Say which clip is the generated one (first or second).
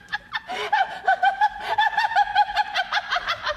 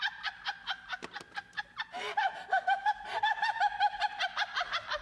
first